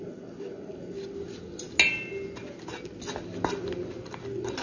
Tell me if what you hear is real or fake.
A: real